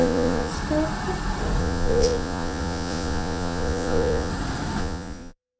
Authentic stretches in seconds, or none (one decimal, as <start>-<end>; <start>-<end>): 0.5-1.6; 4.3-4.8